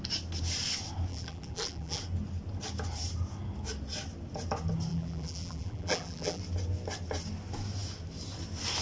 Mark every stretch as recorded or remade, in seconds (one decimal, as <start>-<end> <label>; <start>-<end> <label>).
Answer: 0.0-1.1 recorded; 1.1-2.0 remade; 2.0-4.9 recorded; 4.9-6.4 remade; 6.4-8.8 recorded